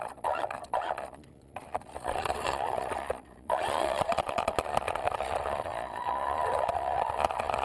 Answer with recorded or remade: remade